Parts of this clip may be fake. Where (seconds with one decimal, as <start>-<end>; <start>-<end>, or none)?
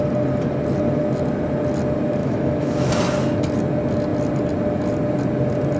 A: 2.2-2.9